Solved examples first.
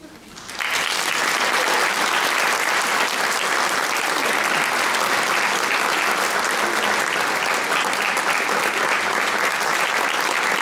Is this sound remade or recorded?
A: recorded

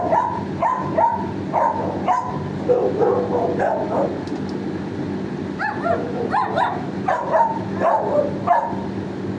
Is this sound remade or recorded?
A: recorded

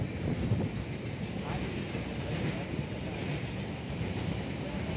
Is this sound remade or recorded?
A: recorded